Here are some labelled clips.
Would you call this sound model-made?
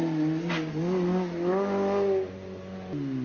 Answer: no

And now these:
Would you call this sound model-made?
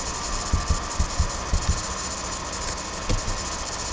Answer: no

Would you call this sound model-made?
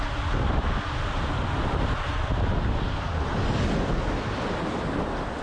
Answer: no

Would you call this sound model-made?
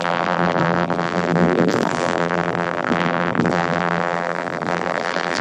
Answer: yes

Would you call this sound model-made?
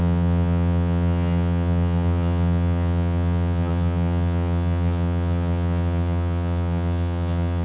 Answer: yes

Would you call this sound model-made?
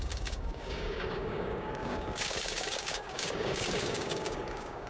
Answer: yes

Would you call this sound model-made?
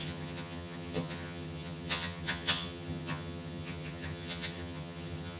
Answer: yes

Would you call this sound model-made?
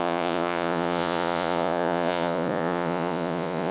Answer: yes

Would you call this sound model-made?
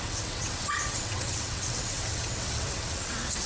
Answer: yes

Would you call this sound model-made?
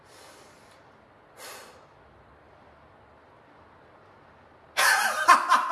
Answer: no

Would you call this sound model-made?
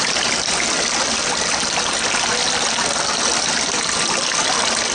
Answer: no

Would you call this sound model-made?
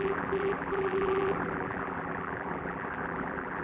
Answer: yes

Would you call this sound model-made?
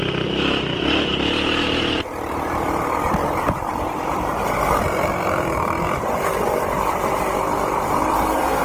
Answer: yes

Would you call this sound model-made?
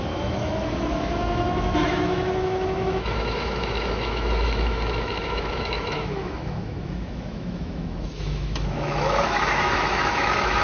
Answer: yes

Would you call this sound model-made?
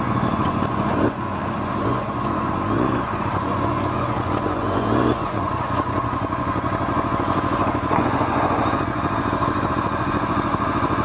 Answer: yes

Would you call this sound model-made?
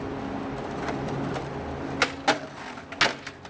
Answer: no